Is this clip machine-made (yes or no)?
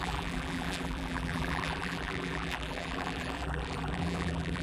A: yes